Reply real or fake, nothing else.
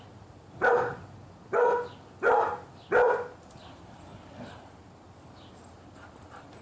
real